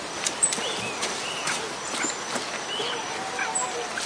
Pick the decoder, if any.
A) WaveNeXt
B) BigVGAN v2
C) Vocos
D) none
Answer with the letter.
D